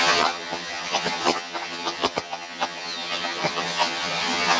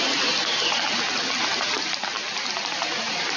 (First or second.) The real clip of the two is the second